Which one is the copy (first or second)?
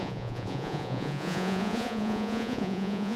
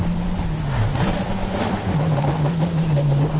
first